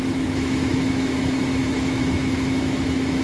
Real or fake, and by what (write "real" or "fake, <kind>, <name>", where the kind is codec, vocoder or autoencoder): fake, autoencoder, DAC-VAE